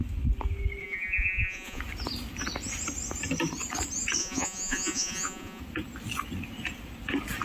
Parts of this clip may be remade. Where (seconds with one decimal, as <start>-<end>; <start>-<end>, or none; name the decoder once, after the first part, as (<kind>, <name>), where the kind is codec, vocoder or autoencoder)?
0.8-1.8 (vocoder, Vocos); 4.2-5.6